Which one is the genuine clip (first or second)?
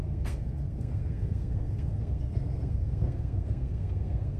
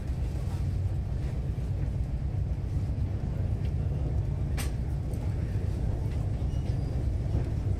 second